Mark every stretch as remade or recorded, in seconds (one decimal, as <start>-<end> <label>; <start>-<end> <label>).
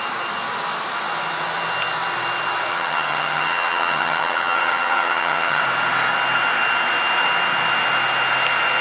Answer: 0.0-2.7 recorded; 2.7-5.6 remade; 5.6-8.8 recorded